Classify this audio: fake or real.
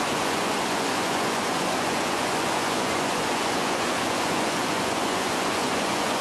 fake